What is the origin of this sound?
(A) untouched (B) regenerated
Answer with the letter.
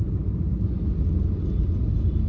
A